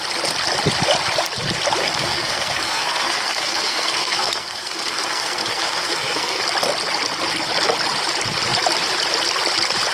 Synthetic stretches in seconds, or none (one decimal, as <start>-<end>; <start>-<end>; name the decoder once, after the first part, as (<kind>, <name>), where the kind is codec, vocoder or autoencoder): 1.8-6.4 (codec, SNAC)